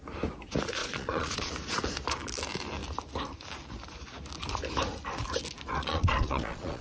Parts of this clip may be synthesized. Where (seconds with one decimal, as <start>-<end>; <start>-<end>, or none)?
0.8-1.5; 5.7-6.8